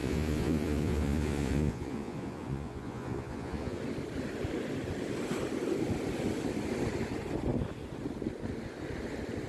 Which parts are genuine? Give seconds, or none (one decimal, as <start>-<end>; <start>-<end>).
3.8-9.5